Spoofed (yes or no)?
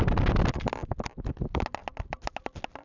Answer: no